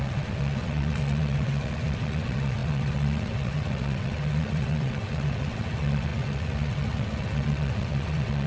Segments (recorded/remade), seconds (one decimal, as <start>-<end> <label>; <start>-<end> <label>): 0.0-8.5 remade